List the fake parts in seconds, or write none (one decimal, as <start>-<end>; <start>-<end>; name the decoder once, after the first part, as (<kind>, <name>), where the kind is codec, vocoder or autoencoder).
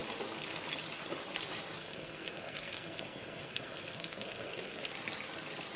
1.8-4.9 (codec, SNAC)